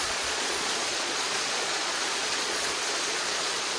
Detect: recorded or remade remade